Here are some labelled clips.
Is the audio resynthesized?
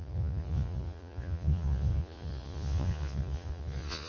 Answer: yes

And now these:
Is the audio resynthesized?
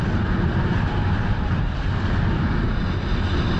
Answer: no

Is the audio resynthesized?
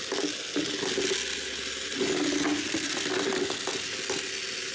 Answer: no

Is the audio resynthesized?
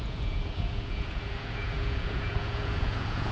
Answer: yes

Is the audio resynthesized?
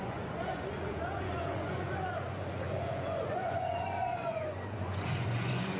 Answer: yes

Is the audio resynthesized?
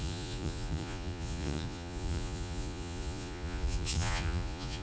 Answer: yes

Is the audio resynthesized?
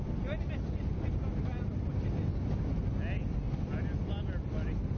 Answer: no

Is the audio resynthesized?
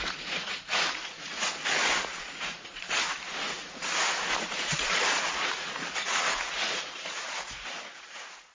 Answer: yes